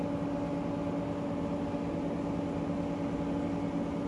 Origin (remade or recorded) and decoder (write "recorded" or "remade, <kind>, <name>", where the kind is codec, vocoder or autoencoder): recorded